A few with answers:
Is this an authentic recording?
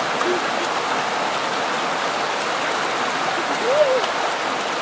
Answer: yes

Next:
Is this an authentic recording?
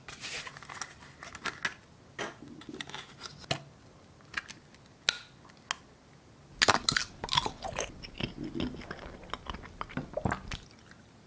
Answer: yes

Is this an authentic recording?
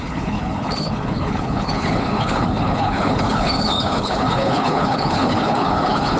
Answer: no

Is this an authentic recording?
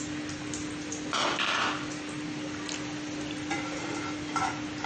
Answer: yes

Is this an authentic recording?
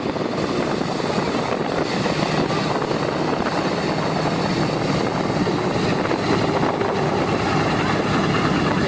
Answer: yes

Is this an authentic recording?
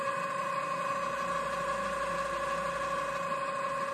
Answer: yes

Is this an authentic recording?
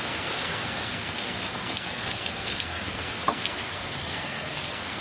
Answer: no